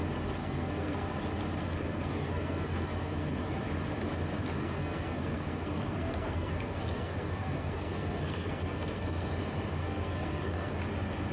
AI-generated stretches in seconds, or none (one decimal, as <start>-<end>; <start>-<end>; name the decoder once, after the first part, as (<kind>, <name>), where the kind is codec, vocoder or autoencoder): 0.4-1.2 (codec, SNAC); 1.6-3.6; 4.6-9.3; 9.8-10.8